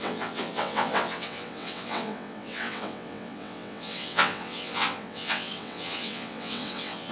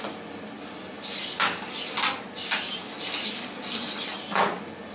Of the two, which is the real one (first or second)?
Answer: second